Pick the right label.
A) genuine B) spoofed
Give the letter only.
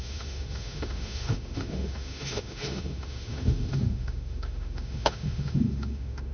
B